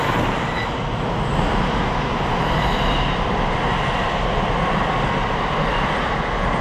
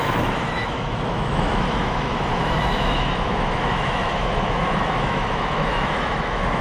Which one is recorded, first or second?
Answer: first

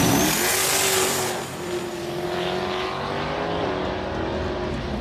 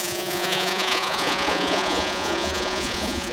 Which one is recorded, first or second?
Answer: first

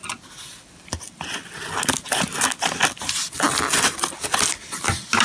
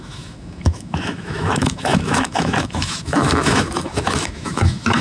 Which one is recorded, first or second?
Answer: first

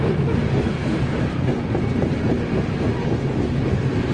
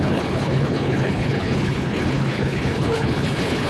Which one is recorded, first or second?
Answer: first